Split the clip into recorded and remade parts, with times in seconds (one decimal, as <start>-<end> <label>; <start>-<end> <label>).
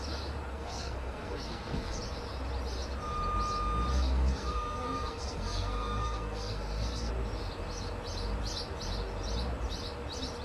0.0-0.5 recorded; 0.5-2.0 remade; 2.0-3.9 recorded; 3.9-7.1 remade; 7.1-10.4 recorded